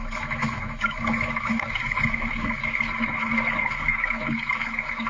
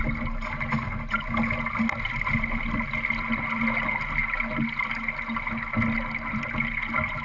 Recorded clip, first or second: second